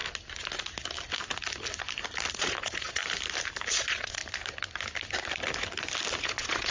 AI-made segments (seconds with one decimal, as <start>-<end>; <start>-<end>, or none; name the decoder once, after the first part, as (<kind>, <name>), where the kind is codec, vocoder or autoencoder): 2.3-3.0 (vocoder, Vocos); 3.7-4.2; 6.2-6.7